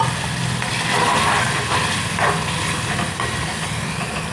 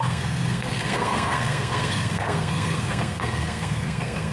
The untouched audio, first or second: first